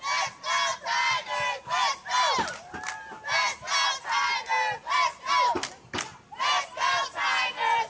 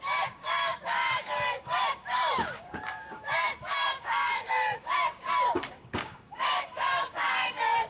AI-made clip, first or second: second